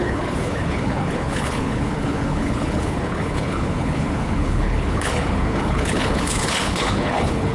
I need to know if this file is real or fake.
fake